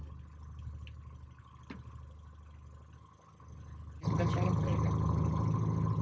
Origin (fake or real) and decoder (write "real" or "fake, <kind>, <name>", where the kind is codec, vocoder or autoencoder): real